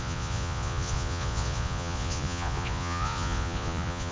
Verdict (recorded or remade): remade